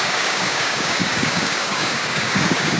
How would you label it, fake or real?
fake